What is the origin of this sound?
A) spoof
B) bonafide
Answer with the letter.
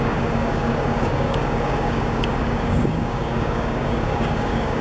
A